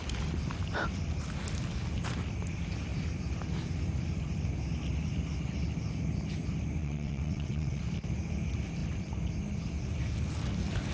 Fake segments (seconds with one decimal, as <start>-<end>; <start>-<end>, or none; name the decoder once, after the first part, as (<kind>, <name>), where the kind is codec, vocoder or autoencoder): 6.8-7.8 (vocoder, WaveNeXt)